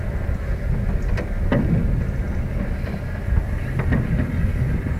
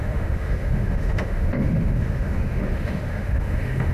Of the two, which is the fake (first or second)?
second